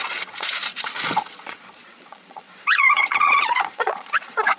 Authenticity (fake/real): fake